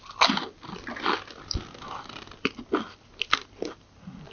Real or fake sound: real